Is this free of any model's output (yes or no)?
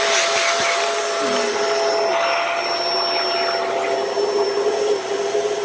yes